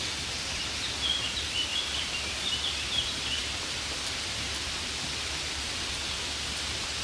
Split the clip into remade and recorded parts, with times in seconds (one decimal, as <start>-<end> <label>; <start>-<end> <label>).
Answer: 0.0-1.7 recorded; 1.7-5.9 remade; 5.9-7.0 recorded